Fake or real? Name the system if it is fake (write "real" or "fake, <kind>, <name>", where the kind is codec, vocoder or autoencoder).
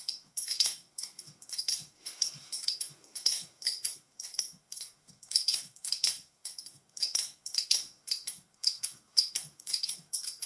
fake, codec, SNAC